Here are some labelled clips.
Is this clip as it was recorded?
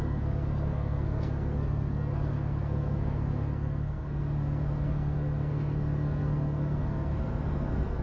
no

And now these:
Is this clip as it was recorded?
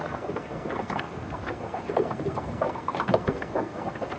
no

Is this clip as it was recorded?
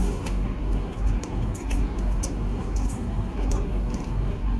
no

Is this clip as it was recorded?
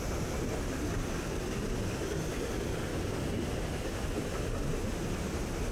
yes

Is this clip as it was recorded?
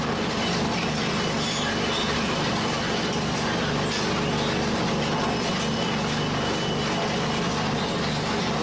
yes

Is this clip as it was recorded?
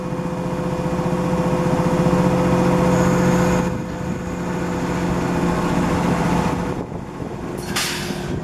yes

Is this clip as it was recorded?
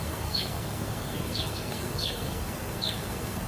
no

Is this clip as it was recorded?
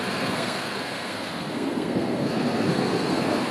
no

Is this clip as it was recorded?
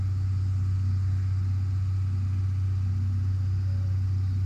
yes